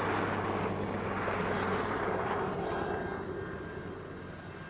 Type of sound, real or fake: real